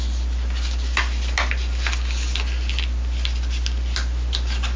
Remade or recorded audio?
recorded